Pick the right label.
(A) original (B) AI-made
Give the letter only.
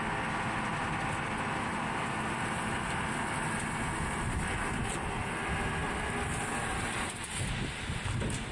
A